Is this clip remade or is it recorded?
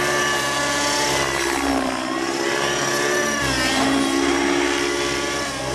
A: recorded